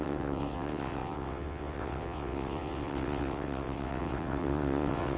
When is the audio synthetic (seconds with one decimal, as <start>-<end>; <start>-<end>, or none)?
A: 0.0-5.2